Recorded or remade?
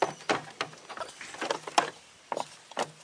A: remade